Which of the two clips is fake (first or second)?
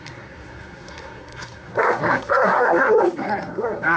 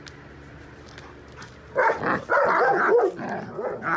first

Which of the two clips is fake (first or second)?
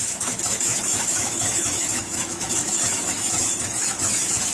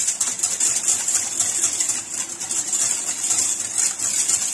first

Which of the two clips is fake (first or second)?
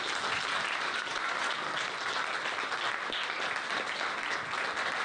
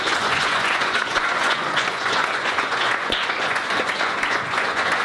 second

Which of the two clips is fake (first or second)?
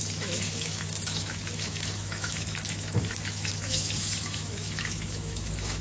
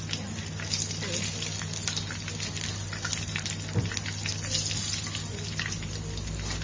first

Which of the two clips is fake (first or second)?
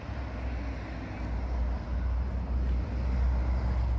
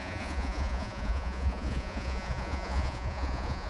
second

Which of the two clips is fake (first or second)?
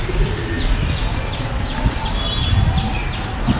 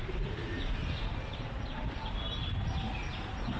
second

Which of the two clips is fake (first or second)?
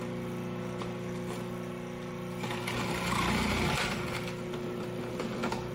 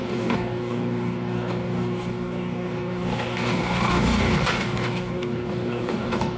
second